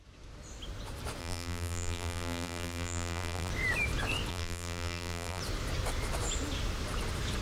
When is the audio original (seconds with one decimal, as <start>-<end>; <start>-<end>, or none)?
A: 0.0-1.2; 3.5-4.3; 5.4-7.4